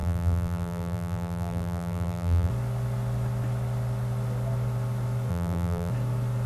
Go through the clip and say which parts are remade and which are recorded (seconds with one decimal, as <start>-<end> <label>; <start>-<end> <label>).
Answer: 0.0-2.5 remade; 2.5-5.3 recorded; 5.3-5.9 remade; 5.9-6.5 recorded